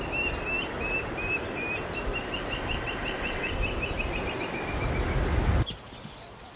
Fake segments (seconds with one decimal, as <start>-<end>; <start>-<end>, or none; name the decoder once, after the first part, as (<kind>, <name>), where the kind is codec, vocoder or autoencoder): 0.0-4.0 (vocoder, BigVGAN v2)